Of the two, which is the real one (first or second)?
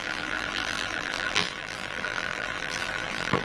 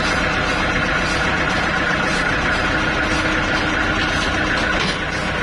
second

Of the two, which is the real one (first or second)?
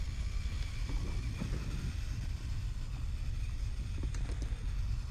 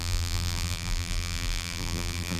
first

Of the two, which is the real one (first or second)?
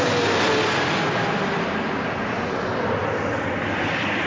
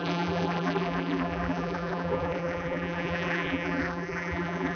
first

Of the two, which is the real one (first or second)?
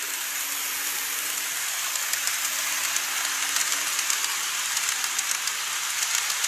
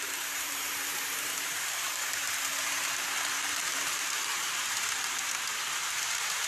first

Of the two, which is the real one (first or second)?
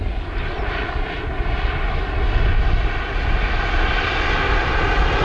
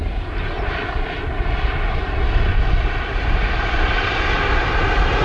first